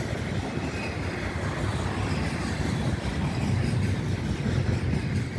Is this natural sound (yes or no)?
yes